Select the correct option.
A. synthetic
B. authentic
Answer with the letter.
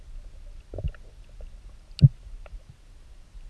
B